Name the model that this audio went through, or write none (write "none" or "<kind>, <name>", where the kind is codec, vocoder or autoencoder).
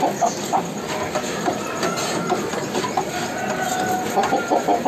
none